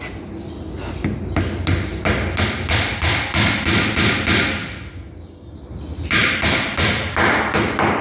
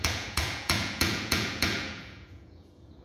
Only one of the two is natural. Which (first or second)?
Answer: first